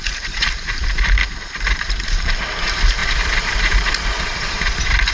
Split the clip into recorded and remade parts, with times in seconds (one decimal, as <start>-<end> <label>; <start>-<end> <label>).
0.0-1.2 remade; 1.2-2.1 recorded; 2.1-5.1 remade

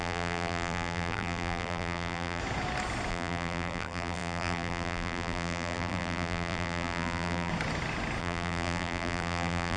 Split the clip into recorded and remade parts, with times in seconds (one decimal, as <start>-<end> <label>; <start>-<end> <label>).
0.0-2.4 remade; 2.4-3.1 recorded; 3.1-7.5 remade; 7.5-8.2 recorded; 8.2-9.8 remade

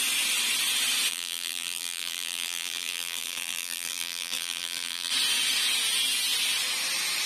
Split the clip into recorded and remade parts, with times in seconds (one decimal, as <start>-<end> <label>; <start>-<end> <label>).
0.0-1.1 recorded; 1.1-5.1 remade; 5.1-7.3 recorded

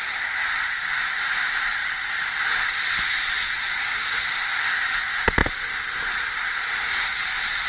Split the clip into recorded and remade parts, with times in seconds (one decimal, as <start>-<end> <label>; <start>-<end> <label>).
0.0-0.4 recorded; 0.4-1.1 remade; 1.1-7.7 recorded